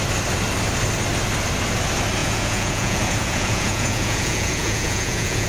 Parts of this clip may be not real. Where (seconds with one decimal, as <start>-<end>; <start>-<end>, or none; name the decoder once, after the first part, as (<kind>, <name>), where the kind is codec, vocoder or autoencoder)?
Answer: 2.2-5.5 (vocoder, Vocos)